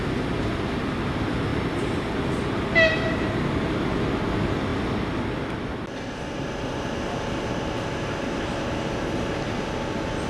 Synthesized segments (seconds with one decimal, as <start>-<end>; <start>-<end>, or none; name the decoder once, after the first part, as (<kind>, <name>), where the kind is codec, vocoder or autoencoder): none